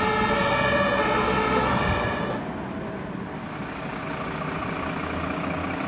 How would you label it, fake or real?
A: real